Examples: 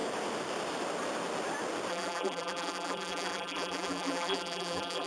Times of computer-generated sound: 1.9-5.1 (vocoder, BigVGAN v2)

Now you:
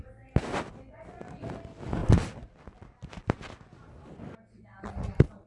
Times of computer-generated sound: none

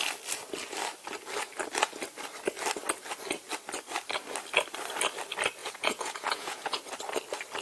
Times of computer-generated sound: 5.6-6.8 (vocoder, Vocos)

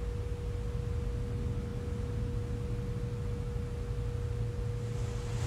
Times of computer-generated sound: none

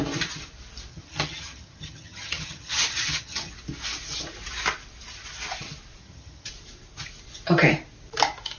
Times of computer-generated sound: 0.9-3.5 (vocoder, HiFi-GAN); 6.0-6.5

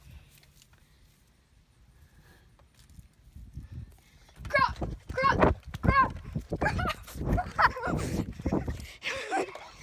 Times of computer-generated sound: none